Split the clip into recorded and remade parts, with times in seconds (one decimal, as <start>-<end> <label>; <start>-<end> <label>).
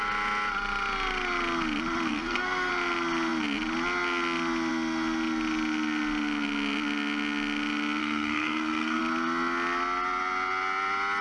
0.0-2.1 recorded; 2.1-2.7 remade; 2.7-8.0 recorded; 8.0-9.0 remade; 9.0-11.2 recorded